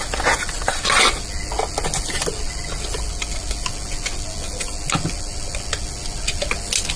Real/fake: real